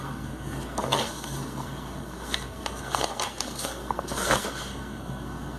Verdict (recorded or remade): remade